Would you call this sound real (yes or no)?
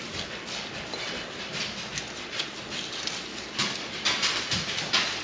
yes